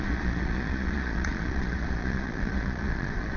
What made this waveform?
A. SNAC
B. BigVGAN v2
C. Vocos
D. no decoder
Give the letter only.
C